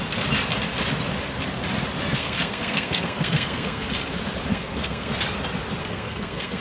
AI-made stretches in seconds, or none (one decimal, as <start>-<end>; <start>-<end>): 2.2-3.9; 4.5-5.1; 5.8-6.6